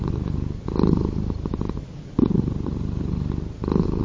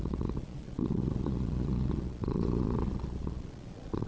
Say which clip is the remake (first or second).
second